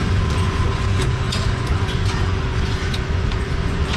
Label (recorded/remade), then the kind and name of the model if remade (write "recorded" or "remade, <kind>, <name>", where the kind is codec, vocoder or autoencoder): remade, vocoder, Vocos